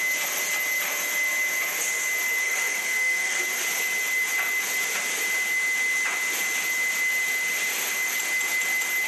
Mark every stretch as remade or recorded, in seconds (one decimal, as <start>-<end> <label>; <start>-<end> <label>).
0.0-2.4 recorded; 2.4-3.4 remade; 3.4-9.1 recorded